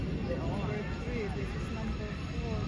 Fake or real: real